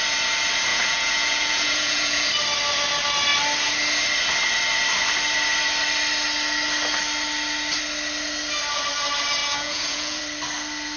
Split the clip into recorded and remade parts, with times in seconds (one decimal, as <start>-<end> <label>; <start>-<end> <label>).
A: 0.0-0.7 recorded; 0.7-2.3 remade; 2.3-9.4 recorded; 9.4-10.2 remade; 10.2-11.0 recorded